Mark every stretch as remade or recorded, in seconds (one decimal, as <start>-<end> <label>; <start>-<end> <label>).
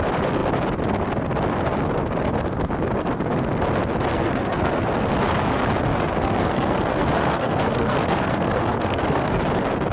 0.0-4.1 recorded; 4.1-4.7 remade; 4.7-5.9 recorded; 5.9-9.4 remade; 9.4-9.9 recorded